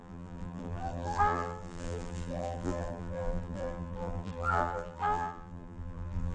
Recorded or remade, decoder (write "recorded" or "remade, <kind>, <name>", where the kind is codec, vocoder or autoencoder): remade, vocoder, BigVGAN v2